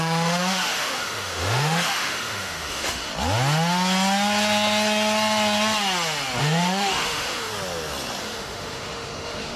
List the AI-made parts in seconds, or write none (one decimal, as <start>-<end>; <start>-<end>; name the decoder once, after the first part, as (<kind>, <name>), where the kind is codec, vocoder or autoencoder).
0.0-3.1 (autoencoder, DAC-VAE); 6.4-7.5; 8.2-9.6